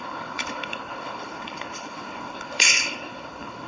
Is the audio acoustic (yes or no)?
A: no